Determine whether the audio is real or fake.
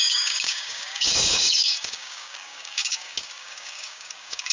fake